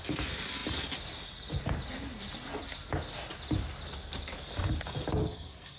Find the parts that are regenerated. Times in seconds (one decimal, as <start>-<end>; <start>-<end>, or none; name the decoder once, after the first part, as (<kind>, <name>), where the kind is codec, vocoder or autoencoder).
5.2-5.8 (codec, SNAC)